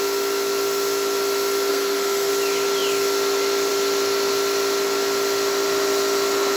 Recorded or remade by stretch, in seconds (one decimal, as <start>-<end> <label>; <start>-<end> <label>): 0.0-1.7 recorded; 1.7-2.3 remade; 2.3-6.6 recorded